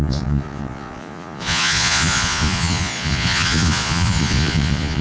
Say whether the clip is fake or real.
fake